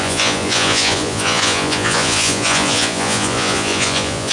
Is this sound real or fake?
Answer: fake